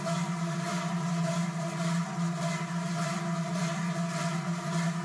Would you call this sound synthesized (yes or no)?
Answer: no